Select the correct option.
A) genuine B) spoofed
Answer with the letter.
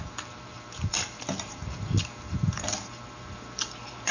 B